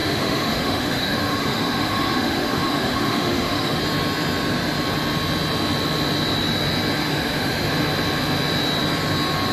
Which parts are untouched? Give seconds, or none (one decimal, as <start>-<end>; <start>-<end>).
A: 3.8-7.1; 7.7-9.5